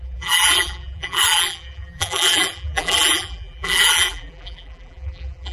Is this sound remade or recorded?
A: remade